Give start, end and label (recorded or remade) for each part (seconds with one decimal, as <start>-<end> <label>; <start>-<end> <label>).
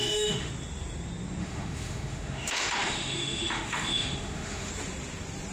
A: 0.0-0.5 remade; 0.5-1.4 recorded; 1.4-4.7 remade; 4.7-5.5 recorded